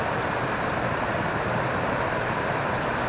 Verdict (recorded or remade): recorded